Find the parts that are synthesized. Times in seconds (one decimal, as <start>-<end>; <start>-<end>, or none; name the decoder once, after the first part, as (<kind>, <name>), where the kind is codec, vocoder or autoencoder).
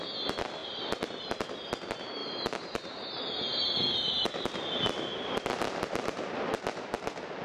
0.6-1.1 (vocoder, BigVGAN v2); 2.2-3.1